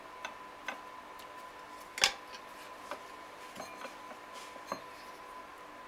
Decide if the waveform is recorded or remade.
recorded